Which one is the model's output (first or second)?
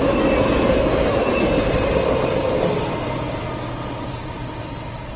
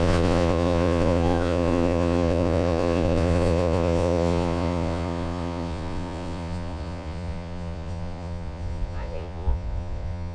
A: second